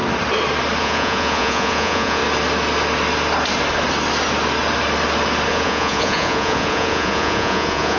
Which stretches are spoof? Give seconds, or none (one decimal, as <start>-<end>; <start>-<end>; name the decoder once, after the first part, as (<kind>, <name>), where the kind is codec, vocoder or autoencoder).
0.8-2.2 (vocoder, Vocos); 5.5-8.0